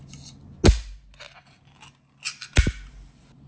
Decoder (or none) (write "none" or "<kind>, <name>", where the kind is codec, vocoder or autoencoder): none